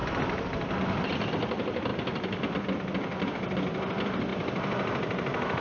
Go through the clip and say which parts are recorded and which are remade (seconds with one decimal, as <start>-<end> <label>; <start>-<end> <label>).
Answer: 0.0-0.6 recorded; 0.6-1.9 remade; 1.9-2.6 recorded; 2.6-5.6 remade